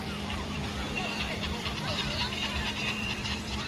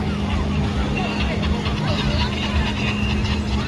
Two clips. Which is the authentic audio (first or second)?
second